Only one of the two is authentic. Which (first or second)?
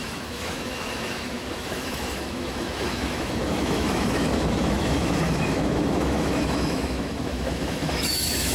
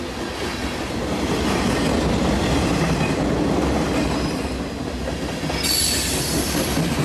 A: second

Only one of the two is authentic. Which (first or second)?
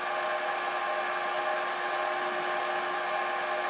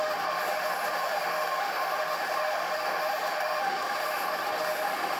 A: first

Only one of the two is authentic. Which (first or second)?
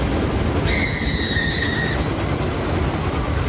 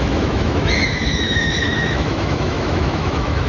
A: first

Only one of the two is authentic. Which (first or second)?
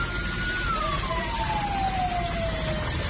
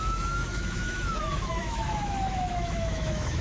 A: first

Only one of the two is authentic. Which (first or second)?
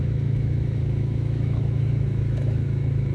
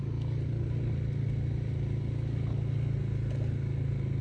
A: second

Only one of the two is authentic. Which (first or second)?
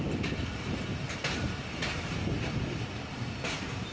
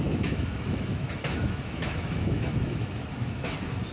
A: first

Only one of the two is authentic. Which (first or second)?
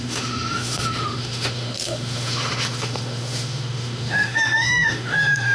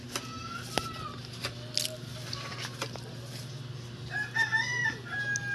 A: second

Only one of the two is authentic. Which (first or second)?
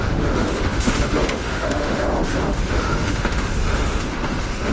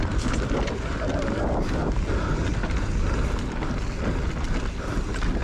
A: second